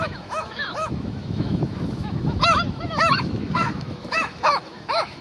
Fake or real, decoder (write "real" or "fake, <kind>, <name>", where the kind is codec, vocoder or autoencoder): fake, autoencoder, DAC-VAE